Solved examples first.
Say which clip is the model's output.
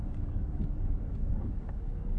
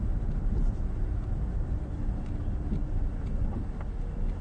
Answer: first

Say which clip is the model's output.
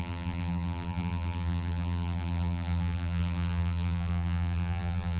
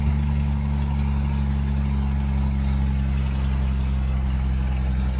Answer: first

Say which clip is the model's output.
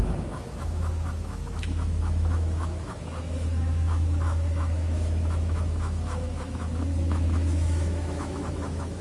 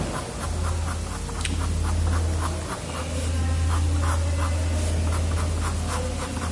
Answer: first